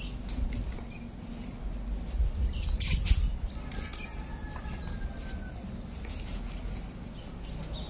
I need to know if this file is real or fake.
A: real